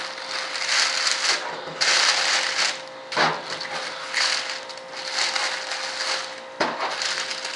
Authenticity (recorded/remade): recorded